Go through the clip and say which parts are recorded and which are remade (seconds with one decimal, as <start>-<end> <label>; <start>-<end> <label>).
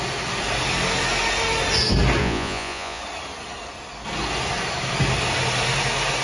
0.0-2.2 recorded; 2.2-3.0 remade; 3.0-6.2 recorded